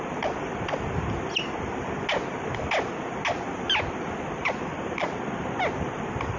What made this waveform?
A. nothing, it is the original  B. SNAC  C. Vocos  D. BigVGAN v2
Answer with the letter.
A